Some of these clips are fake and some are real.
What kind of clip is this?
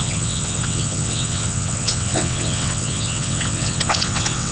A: fake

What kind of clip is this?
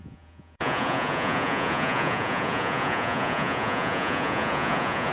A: fake